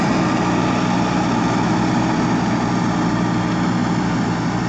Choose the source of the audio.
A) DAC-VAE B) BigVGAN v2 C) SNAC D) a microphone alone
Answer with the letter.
D